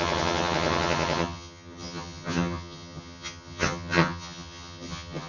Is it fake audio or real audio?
fake